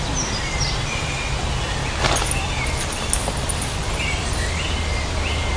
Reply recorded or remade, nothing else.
recorded